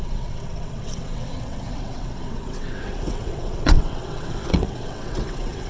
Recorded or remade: remade